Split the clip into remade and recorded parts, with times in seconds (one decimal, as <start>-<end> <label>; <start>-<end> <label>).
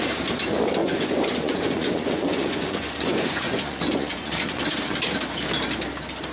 0.0-0.8 recorded; 0.8-4.6 remade; 4.6-6.3 recorded